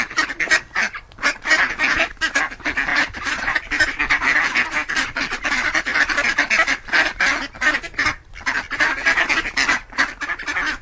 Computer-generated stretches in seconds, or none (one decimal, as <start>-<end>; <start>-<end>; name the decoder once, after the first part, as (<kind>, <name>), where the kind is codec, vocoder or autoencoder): 2.9-4.0 (vocoder, BigVGAN v2)